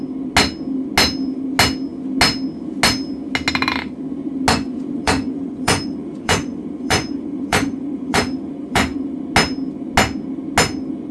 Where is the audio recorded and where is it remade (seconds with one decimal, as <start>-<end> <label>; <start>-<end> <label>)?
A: 0.0-4.5 recorded; 4.5-9.2 remade; 9.2-11.1 recorded